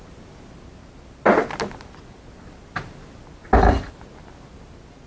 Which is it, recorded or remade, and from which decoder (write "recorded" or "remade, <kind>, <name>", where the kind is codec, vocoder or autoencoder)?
recorded